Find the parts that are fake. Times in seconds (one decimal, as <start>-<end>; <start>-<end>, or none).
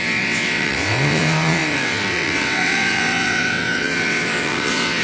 0.0-5.0